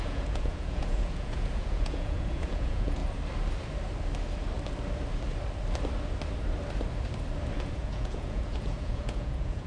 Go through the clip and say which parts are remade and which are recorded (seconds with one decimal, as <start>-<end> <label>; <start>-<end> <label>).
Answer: 0.0-3.0 remade; 3.0-7.7 recorded; 7.7-9.7 remade